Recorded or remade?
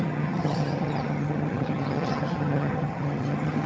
remade